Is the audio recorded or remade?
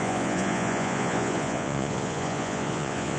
remade